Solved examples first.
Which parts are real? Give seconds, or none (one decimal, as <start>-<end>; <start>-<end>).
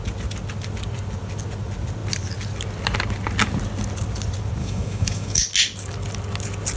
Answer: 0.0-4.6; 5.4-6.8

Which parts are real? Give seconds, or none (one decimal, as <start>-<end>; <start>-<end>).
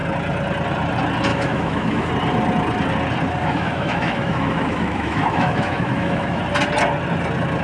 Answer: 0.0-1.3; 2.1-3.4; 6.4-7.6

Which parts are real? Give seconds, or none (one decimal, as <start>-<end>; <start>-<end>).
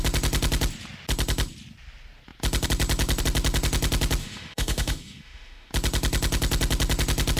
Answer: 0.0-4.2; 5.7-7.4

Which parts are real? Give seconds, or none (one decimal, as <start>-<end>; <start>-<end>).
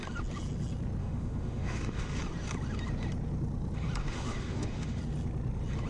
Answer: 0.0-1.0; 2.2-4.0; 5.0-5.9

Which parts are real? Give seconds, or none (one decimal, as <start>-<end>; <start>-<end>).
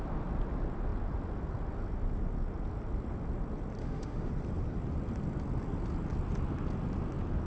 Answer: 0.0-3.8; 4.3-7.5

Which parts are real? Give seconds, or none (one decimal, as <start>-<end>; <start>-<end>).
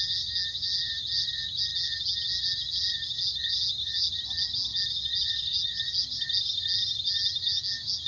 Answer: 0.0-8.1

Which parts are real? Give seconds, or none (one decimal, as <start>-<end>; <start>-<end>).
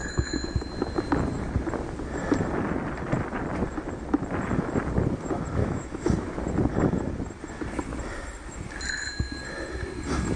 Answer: 0.7-5.6; 6.1-10.4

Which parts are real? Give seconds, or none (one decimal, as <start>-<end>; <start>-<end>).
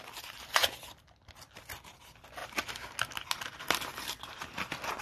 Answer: 0.0-5.0